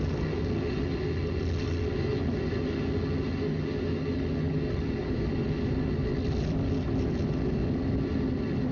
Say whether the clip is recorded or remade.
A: recorded